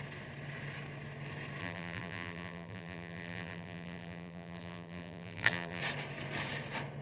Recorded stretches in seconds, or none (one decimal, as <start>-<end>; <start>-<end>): 0.0-1.6; 5.8-7.0